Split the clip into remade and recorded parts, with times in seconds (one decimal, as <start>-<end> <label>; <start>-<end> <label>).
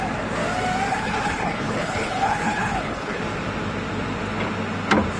0.0-0.9 recorded; 0.9-3.2 remade; 3.2-5.2 recorded